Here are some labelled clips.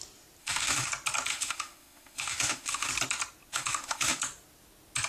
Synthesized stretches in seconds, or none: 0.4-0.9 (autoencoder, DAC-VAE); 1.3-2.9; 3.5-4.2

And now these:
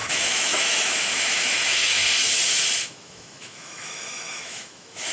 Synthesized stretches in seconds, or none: 0.0-2.0 (autoencoder, DAC-VAE); 2.8-5.1